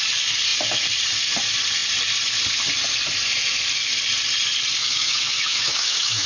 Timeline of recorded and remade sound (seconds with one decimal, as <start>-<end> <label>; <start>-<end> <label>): 0.0-4.8 recorded; 4.8-6.3 remade

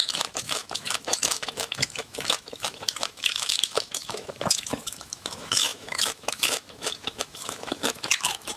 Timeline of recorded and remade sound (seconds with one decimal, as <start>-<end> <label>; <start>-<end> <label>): 0.0-8.6 remade

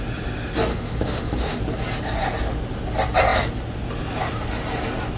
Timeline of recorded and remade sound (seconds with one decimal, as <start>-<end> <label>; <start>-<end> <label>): 0.0-0.7 recorded; 0.7-1.6 remade; 1.6-5.2 recorded